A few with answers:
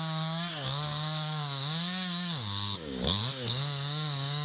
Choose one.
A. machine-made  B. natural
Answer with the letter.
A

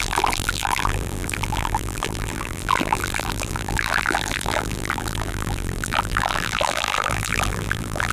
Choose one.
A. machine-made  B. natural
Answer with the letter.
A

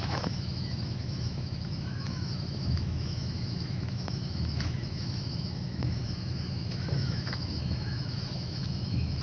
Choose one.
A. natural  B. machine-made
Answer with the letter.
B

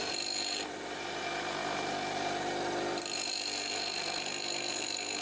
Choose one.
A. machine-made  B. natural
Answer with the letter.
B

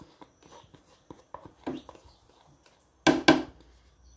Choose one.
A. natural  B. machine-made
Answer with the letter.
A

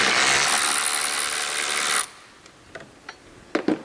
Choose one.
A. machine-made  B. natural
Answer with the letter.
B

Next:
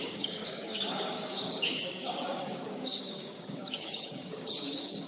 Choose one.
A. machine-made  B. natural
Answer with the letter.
A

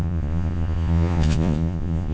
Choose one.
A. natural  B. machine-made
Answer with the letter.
B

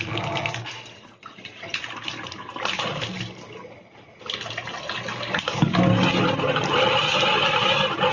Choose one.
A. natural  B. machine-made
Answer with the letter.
A